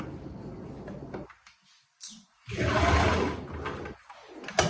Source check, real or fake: real